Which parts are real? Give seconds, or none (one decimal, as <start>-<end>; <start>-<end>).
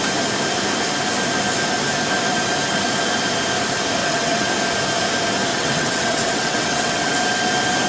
0.0-4.0; 4.5-5.5; 7.1-7.9